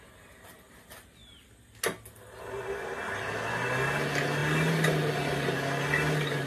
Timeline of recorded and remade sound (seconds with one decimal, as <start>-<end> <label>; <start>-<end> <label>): 0.0-6.5 recorded